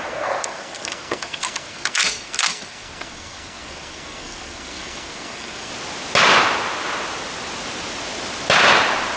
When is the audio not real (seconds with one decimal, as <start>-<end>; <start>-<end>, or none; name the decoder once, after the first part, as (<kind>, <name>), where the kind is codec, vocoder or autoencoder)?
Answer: 0.0-5.7 (codec, SNAC)

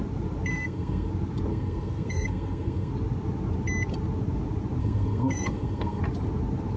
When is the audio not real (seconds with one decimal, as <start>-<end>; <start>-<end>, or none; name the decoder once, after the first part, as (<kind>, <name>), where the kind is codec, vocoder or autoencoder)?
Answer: 0.5-1.1 (codec, SNAC); 1.5-2.9; 4.8-6.0

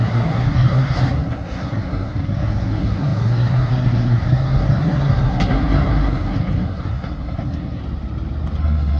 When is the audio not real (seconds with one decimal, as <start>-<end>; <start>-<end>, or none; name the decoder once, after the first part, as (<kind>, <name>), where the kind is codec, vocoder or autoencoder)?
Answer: 0.0-7.8 (codec, SNAC); 8.6-9.0

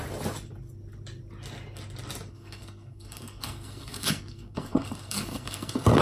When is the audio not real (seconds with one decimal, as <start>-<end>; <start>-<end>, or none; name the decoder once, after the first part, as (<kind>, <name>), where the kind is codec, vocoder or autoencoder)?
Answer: 2.3-6.0 (codec, SNAC)